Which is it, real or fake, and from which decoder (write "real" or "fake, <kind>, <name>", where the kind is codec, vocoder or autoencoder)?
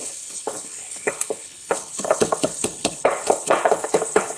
fake, codec, HILCodec